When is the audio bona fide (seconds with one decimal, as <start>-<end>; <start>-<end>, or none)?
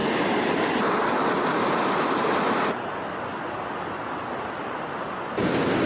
0.0-5.9